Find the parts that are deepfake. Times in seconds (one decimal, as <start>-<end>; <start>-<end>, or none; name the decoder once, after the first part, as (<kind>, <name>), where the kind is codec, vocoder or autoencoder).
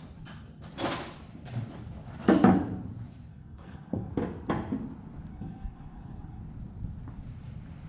3.3-4.1 (codec, SNAC); 5.3-6.4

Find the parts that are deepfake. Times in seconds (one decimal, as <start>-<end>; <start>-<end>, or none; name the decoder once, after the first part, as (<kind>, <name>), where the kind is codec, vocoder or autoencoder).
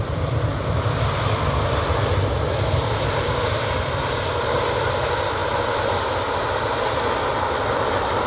0.0-5.4 (vocoder, BigVGAN v2); 7.7-8.3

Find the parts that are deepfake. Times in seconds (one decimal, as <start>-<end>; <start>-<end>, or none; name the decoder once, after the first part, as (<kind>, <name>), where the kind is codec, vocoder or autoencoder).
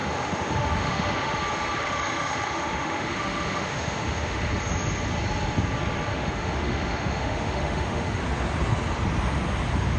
0.0-1.4 (autoencoder, DAC-VAE); 1.8-4.5; 6.1-8.2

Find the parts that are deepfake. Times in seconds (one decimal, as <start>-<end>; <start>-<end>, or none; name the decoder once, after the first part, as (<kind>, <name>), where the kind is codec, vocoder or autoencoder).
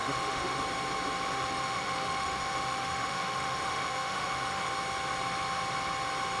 0.0-0.6 (autoencoder, DAC-VAE); 1.3-4.7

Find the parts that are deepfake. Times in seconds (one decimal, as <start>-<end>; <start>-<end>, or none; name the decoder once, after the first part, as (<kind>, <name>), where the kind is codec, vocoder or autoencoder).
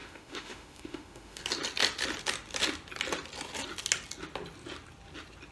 0.0-1.4 (autoencoder, DAC-VAE)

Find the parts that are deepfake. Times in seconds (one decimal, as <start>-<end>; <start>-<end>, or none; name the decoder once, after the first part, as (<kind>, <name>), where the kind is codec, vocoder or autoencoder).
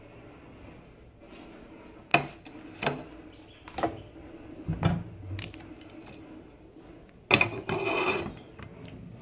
none